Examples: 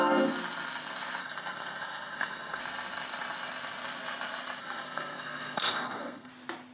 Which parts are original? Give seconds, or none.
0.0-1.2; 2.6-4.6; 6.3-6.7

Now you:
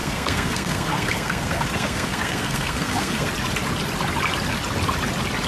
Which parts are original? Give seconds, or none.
3.3-5.5

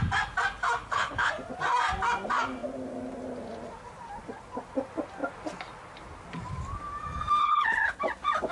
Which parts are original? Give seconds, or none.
0.0-0.8; 1.3-7.4; 8.0-8.5

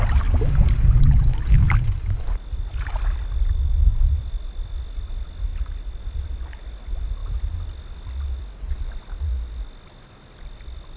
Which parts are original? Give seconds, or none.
0.0-3.9; 5.1-7.2; 8.4-11.0

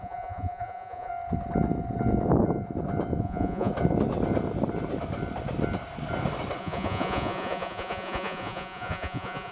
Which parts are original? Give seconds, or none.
1.1-3.2; 3.7-6.6

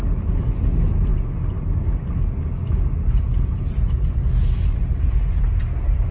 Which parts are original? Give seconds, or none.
0.0-6.1

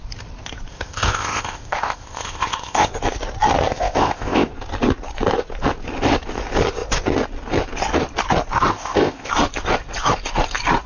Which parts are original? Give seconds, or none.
0.0-0.7; 2.9-3.7; 4.5-8.7; 9.3-10.9